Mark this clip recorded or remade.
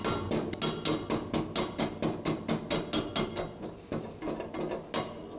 recorded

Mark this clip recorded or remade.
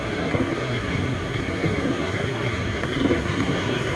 remade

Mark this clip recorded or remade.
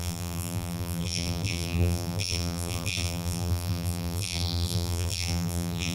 remade